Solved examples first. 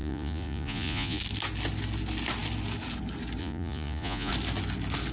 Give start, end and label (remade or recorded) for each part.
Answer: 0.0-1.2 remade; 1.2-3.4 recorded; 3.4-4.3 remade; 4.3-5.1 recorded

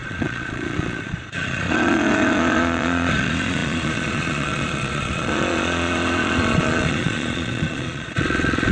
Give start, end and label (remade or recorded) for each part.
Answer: 0.0-8.7 remade

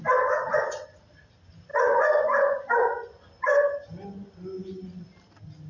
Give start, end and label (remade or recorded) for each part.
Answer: 0.0-1.7 recorded; 1.7-3.2 remade; 3.2-5.7 recorded

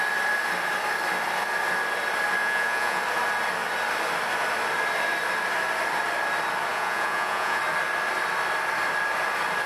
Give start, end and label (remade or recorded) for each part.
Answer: 0.0-2.4 recorded; 2.4-3.0 remade; 3.0-6.7 recorded; 6.7-7.6 remade; 7.6-9.7 recorded